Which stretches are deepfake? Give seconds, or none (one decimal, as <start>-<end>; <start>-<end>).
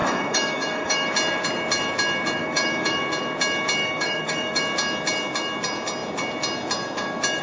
0.0-1.1; 2.4-3.0; 3.8-4.6